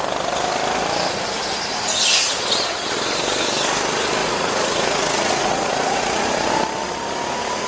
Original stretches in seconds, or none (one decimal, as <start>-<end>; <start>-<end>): 0.0-4.2; 6.5-7.7